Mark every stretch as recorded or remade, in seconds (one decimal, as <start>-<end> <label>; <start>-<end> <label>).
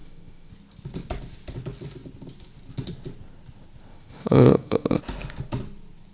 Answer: 0.0-0.5 remade; 0.5-3.9 recorded; 3.9-5.0 remade; 5.0-6.1 recorded